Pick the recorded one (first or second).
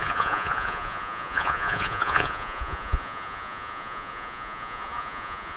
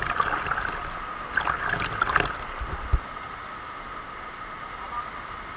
second